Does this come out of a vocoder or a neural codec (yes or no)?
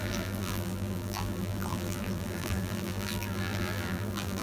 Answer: yes